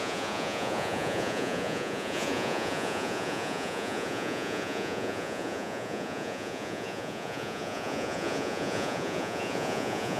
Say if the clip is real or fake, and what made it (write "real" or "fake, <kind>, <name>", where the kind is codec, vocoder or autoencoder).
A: fake, vocoder, Vocos